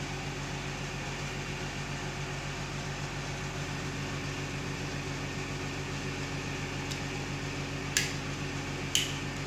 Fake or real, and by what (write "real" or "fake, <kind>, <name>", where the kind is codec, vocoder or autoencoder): real